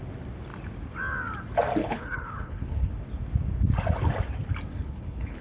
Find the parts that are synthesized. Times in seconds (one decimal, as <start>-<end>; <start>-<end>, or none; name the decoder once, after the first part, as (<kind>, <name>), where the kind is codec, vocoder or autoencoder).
1.8-2.9 (codec, HILCodec); 4.7-5.4